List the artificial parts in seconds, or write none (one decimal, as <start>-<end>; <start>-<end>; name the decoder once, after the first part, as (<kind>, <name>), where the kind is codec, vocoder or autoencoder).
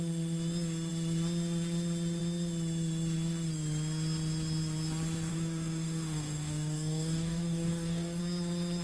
5.3-8.2 (codec, DAC)